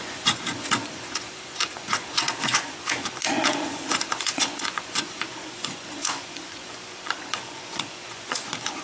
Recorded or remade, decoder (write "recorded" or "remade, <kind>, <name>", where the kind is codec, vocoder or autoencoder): remade, vocoder, Vocos